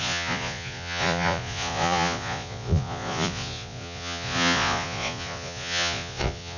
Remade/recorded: remade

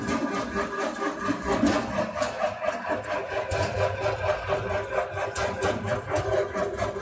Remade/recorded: recorded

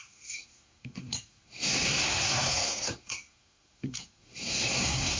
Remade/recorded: remade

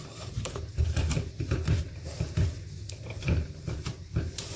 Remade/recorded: remade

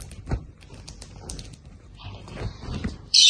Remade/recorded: remade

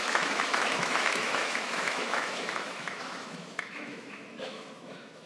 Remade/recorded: remade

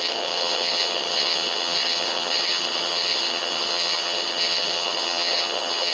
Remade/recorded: remade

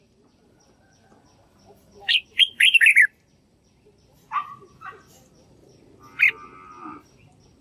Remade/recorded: remade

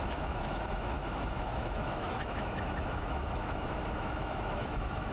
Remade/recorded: remade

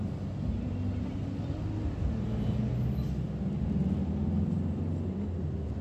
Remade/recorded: recorded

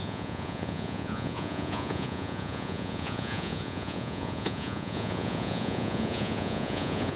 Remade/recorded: remade